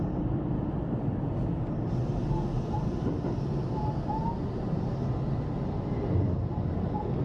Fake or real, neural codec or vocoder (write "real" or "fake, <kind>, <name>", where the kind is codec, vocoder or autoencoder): real